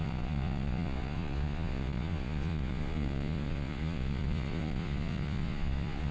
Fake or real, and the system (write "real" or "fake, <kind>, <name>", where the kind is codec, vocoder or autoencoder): fake, vocoder, Vocos